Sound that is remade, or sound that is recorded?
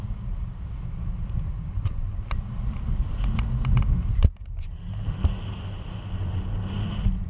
recorded